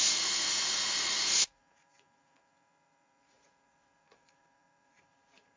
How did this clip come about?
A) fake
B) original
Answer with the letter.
A